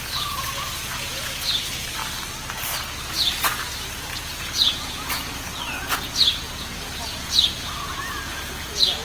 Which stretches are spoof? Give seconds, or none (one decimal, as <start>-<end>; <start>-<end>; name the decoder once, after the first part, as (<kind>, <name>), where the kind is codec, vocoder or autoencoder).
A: 0.0-2.0 (vocoder, Vocos); 3.1-9.0